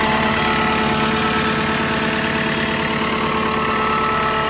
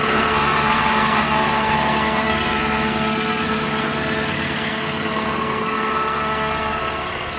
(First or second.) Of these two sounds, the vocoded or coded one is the second